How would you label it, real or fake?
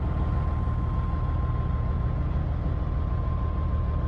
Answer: real